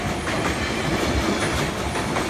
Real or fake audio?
real